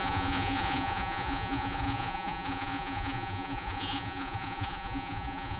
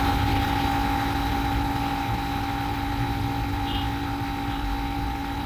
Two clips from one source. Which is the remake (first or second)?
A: first